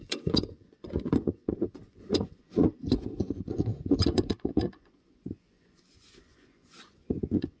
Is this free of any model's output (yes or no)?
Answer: no